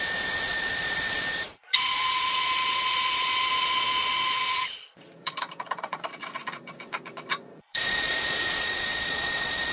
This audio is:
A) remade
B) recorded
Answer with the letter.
A